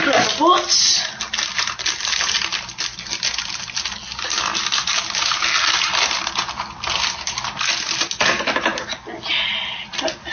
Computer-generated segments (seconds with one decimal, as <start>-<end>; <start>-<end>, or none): none